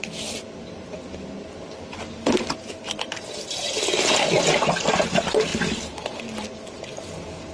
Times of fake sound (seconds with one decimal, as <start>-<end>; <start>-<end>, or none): none